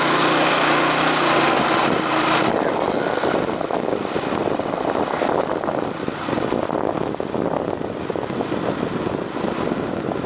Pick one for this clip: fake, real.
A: real